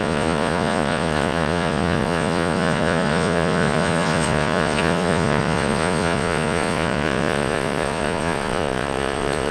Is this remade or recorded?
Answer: remade